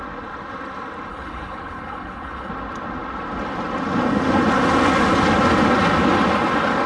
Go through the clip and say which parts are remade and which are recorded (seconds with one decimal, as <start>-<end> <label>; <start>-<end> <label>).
0.0-1.1 recorded; 1.1-2.5 remade; 2.5-6.9 recorded